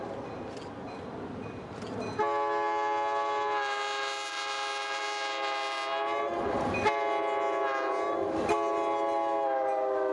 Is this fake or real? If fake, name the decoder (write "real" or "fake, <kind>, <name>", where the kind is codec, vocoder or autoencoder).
real